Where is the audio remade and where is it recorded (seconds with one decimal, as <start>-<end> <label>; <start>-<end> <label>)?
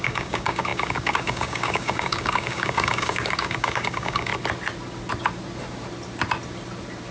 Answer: 0.0-4.3 remade; 4.3-7.1 recorded